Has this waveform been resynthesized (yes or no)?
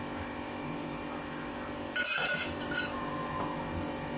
no